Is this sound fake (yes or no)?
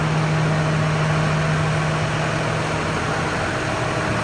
no